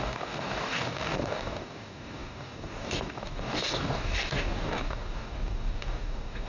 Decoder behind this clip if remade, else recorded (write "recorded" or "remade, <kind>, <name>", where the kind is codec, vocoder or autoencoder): remade, codec, DAC